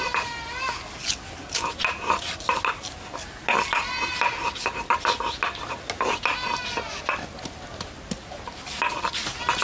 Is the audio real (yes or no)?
yes